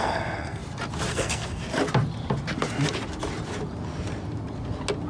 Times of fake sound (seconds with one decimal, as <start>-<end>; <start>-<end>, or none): 0.0-0.6; 1.1-1.6